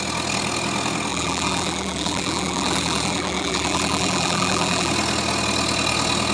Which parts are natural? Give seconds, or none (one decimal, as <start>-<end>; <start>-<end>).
0.0-1.1; 4.9-6.3

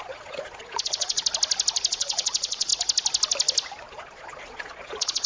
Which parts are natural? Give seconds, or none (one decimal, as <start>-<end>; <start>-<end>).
1.2-1.9; 2.7-3.9

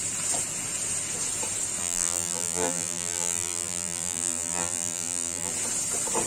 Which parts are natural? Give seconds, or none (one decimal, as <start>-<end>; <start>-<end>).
0.0-1.8; 5.5-6.3

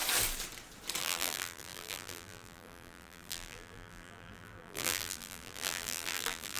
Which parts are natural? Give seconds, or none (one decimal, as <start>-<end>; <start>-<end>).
0.0-1.0

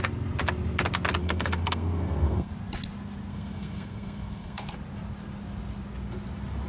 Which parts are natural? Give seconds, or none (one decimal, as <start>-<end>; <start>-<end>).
0.0-1.2; 2.5-3.3; 4.7-6.7

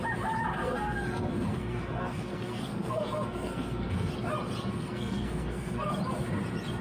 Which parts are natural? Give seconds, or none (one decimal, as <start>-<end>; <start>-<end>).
0.0-0.6; 4.1-4.7; 5.9-6.8